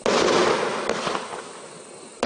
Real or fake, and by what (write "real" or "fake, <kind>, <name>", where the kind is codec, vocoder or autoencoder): real